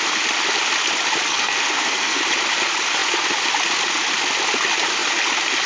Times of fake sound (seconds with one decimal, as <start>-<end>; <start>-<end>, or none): 1.3-2.2